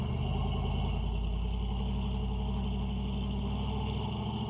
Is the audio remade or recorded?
recorded